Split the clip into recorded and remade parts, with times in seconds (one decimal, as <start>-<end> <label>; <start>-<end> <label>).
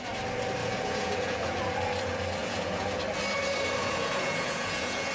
0.0-0.6 recorded; 0.6-1.6 remade; 1.6-2.4 recorded; 2.4-3.0 remade; 3.0-3.8 recorded; 3.8-5.1 remade